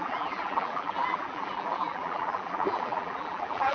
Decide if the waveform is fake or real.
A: fake